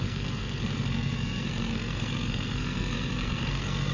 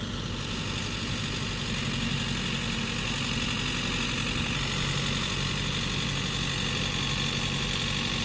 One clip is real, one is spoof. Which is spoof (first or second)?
first